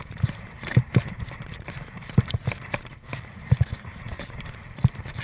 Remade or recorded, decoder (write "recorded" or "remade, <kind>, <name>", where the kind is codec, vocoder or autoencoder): remade, vocoder, BigVGAN v2